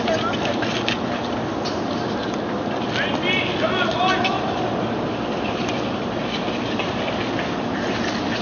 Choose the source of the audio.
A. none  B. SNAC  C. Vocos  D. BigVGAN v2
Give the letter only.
A